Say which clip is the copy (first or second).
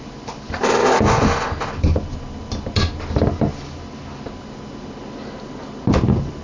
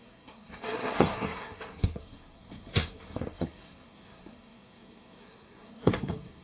second